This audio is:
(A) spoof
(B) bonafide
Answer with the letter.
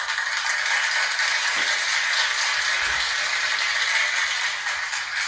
B